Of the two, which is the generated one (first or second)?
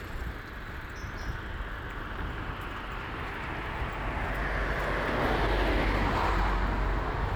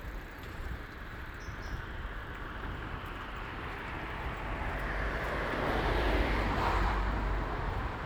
second